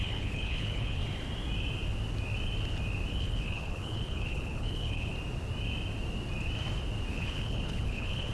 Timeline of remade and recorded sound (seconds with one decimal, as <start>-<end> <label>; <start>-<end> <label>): 0.0-1.0 remade; 1.0-3.1 recorded; 3.1-5.1 remade; 5.1-7.1 recorded; 7.1-8.3 remade